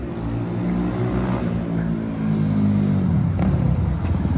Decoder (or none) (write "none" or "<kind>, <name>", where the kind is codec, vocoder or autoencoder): none